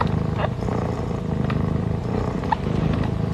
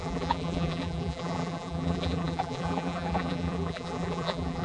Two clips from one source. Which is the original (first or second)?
first